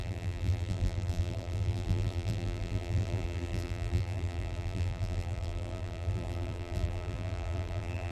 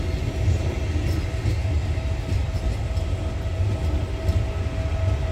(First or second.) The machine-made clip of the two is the first